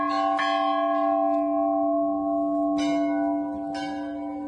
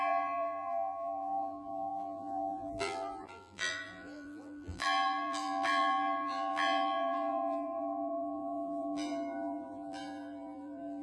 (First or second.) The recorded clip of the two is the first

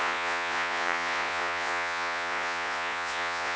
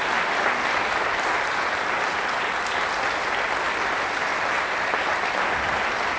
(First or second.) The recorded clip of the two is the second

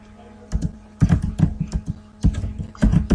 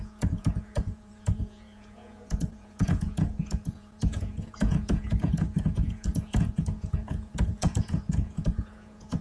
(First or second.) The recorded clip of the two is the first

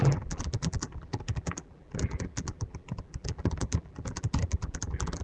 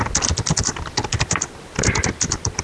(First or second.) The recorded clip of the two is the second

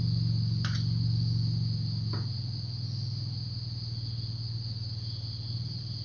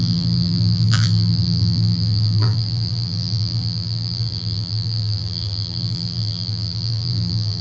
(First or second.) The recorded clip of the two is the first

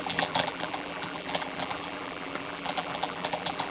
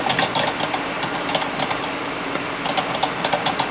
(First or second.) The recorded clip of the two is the second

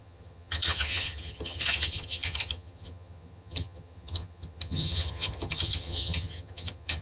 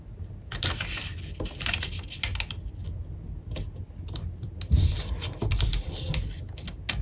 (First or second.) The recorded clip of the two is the second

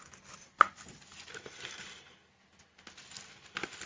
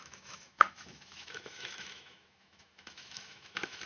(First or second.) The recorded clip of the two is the first